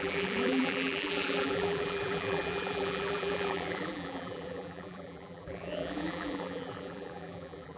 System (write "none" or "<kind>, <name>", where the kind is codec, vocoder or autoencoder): vocoder, BigVGAN v2